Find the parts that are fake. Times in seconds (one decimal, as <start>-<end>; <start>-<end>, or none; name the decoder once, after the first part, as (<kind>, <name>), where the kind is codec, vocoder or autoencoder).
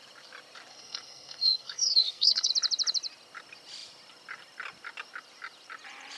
0.7-2.5 (codec, SNAC)